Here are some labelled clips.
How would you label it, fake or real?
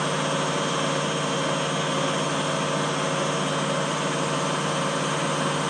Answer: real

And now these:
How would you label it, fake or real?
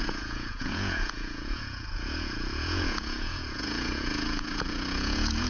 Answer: fake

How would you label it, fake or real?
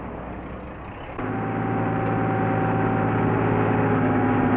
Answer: real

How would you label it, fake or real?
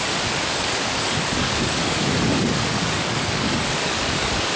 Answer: fake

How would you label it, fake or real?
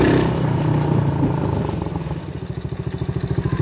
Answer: real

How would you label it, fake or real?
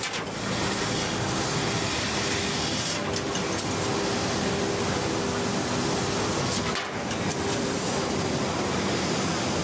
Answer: real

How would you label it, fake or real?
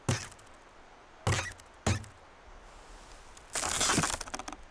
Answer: real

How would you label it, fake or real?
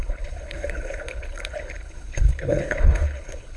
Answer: fake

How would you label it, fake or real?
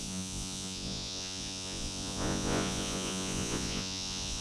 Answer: fake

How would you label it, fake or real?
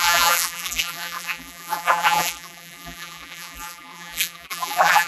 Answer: fake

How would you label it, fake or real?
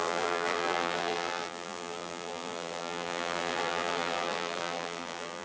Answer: fake